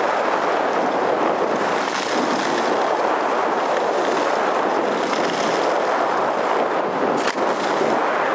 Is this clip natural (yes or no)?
yes